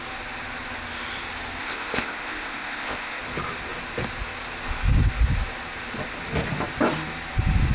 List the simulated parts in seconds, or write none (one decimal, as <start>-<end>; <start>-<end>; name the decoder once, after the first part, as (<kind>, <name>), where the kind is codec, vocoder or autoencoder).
1.6-3.2 (codec, ZipCodec)